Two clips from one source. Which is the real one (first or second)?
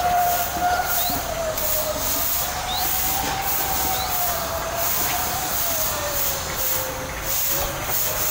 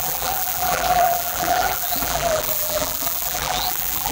first